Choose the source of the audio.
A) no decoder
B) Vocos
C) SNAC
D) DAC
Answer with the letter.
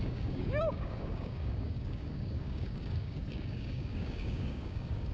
D